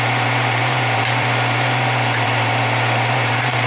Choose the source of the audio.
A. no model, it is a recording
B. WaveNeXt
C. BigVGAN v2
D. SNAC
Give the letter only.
C